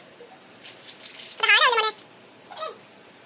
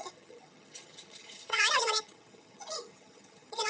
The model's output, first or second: second